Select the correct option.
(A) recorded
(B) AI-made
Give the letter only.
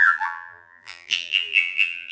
B